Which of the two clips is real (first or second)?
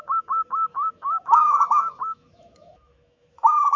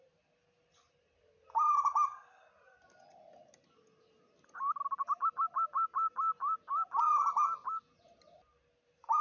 second